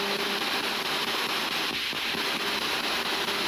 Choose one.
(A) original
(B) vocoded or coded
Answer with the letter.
A